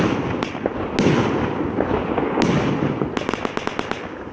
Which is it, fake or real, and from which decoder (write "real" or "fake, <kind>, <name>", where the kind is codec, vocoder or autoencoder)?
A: real